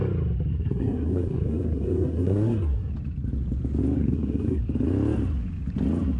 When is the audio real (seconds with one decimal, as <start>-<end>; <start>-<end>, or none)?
0.0-0.5; 2.9-4.0; 4.6-6.2